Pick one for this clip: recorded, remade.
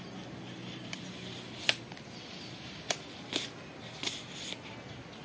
recorded